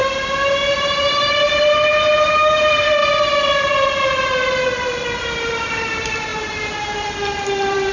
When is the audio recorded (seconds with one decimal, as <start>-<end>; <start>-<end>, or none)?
0.0-7.9